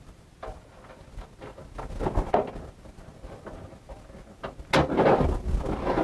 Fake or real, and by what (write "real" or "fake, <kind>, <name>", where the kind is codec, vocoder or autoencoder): real